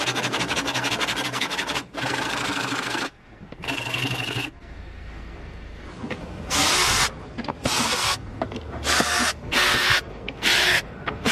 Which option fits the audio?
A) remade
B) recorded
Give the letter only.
A